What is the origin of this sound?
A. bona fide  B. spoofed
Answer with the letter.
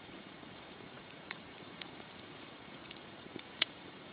B